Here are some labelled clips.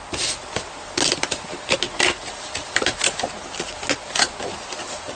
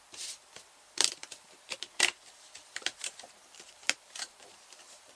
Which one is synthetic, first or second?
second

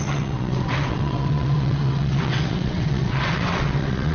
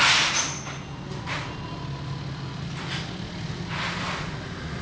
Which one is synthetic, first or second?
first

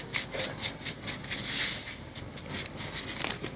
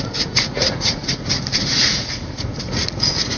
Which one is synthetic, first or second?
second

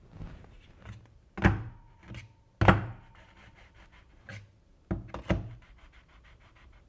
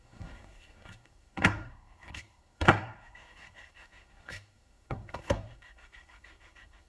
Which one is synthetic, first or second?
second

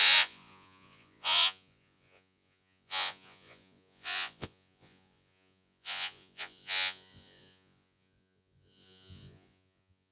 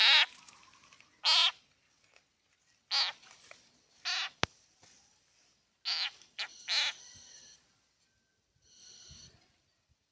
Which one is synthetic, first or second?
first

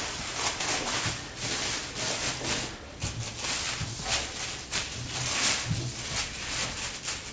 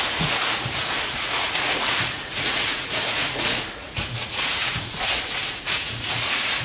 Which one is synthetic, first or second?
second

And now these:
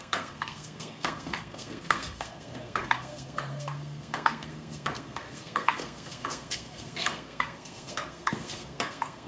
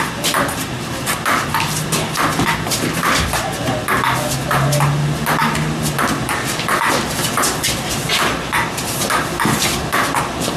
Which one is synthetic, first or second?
first